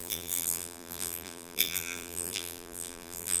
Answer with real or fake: fake